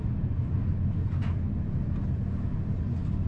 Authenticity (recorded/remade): recorded